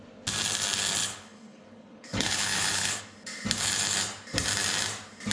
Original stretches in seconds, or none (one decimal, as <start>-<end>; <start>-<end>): 0.0-1.0; 3.0-5.3

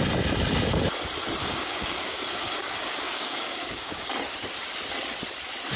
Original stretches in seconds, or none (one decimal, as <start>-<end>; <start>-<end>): 0.0-1.4; 4.2-5.8

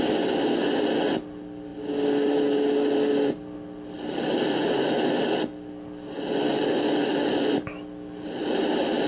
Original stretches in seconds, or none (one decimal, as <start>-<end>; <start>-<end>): 0.0-9.1

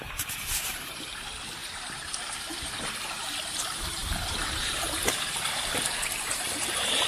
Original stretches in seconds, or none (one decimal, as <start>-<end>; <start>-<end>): none

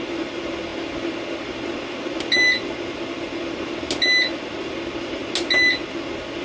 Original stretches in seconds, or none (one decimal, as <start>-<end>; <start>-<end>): 0.0-6.4

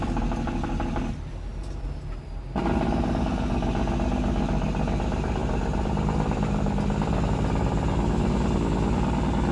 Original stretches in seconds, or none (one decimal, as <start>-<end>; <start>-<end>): 0.0-9.5